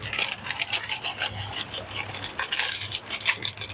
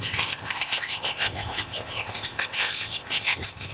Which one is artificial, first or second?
second